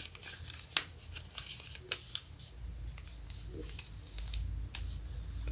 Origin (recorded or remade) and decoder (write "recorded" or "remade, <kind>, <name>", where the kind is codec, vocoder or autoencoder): recorded